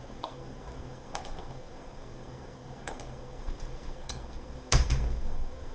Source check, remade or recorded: remade